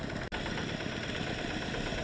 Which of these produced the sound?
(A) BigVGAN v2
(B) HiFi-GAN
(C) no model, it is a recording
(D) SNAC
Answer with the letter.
C